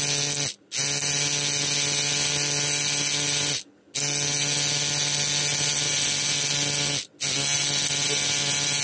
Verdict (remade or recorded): recorded